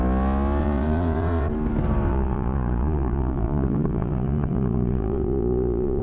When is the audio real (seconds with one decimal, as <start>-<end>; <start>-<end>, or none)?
0.0-0.6; 1.5-2.1